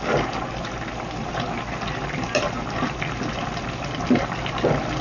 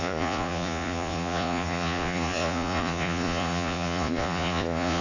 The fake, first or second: second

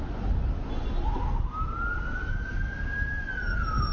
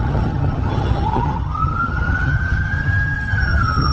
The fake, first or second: second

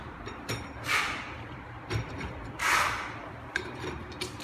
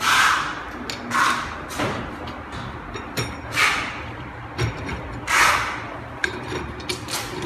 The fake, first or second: first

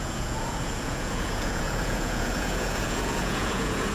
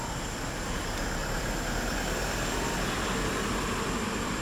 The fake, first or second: first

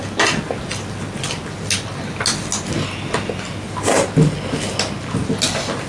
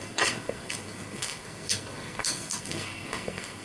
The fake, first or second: second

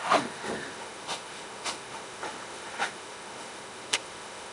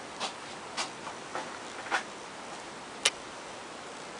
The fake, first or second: first